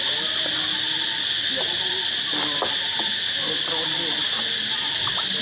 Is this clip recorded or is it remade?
recorded